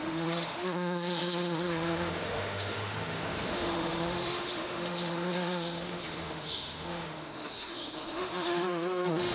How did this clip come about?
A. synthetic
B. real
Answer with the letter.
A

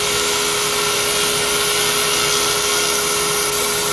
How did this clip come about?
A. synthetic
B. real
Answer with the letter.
B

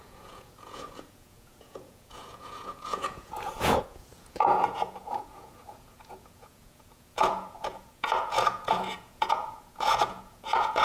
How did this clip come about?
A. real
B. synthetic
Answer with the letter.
B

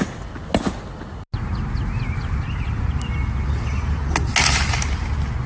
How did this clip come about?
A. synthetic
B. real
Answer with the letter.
B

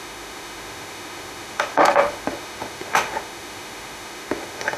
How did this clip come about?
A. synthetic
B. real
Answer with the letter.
A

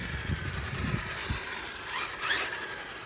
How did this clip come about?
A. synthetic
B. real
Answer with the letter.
B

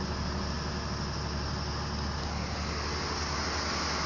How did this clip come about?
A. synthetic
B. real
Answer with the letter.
B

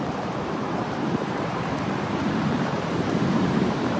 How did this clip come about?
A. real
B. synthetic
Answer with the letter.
B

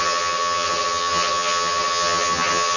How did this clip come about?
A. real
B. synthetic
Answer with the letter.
B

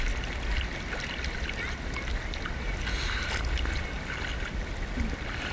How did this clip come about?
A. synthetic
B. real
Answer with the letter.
B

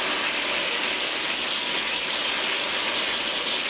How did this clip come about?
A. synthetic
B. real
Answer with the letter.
B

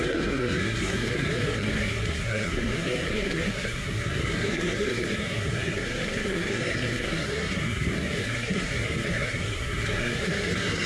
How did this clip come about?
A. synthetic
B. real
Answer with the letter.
A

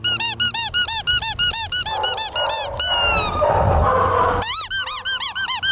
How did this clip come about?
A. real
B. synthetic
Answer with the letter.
A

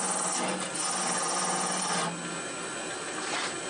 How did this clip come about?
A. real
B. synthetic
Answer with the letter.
A